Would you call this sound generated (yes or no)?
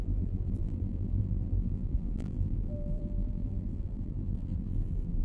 yes